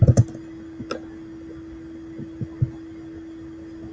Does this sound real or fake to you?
real